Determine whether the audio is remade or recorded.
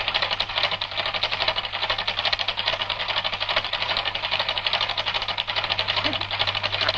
recorded